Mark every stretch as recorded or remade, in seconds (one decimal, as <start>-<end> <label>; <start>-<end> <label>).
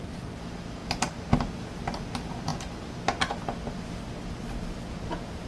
0.0-5.5 recorded